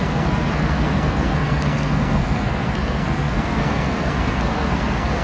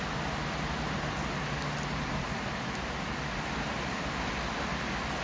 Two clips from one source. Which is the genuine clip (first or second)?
second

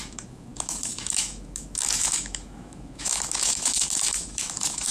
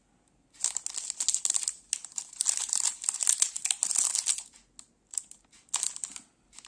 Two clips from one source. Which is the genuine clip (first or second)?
second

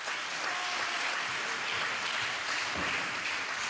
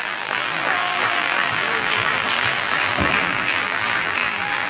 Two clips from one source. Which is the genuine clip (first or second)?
first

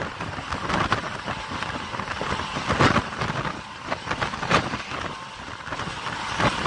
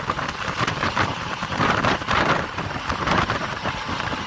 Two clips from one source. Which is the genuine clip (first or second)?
first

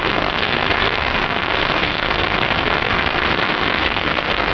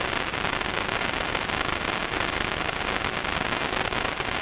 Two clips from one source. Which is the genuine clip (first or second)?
second